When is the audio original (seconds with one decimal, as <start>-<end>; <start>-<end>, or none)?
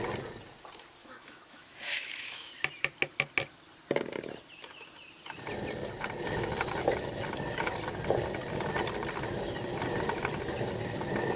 0.0-1.0; 2.5-11.4